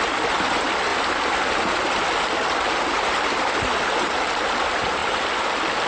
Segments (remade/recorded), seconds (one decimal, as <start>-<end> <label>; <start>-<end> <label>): 0.0-5.9 recorded